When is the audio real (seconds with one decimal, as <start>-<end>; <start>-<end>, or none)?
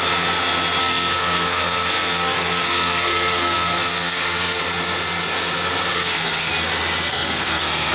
0.0-0.8; 4.6-5.9; 6.5-7.1